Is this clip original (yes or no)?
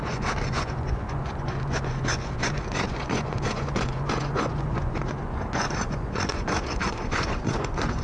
no